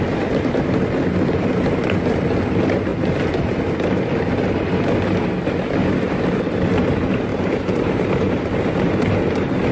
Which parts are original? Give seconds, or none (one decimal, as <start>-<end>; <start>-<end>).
0.0-7.3; 8.9-9.7